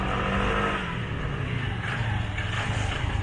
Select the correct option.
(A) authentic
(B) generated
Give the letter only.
A